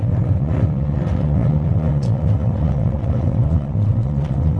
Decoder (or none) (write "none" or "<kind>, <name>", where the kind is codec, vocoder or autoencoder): vocoder, WaveNeXt